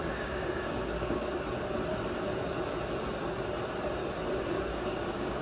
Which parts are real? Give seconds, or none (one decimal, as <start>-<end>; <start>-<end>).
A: 1.2-4.4